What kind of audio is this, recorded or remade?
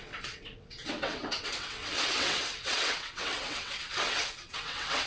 remade